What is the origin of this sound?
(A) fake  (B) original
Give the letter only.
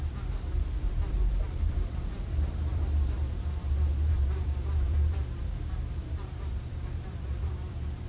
A